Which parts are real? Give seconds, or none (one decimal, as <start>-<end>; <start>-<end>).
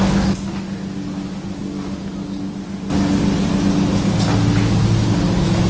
0.0-5.7